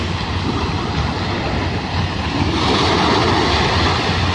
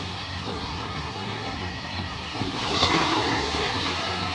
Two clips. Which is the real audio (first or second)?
first